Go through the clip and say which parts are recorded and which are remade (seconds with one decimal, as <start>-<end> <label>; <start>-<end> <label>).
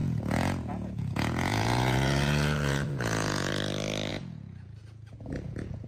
0.0-3.5 remade; 3.5-4.1 recorded; 4.1-5.9 remade